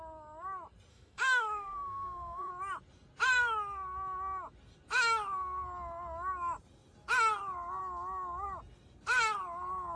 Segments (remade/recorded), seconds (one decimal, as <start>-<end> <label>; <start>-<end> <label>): 0.0-0.9 recorded; 0.9-2.5 remade; 2.5-10.0 recorded